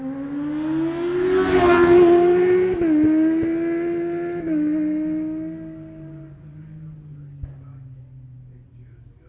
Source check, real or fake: real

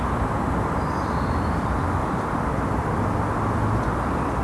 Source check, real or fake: real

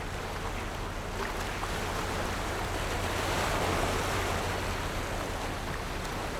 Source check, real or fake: real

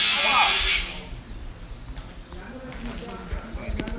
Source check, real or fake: real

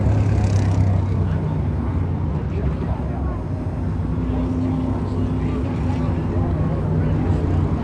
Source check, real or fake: real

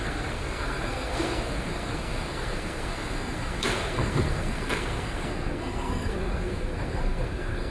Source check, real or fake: fake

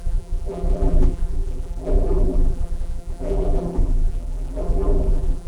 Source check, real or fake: fake